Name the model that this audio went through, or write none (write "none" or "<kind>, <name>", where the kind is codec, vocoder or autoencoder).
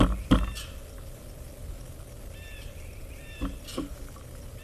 none